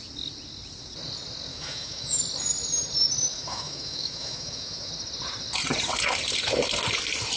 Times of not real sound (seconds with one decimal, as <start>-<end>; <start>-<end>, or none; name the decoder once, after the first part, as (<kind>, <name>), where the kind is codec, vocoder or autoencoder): 1.5-2.2 (autoencoder, DAC-VAE); 3.3-4.9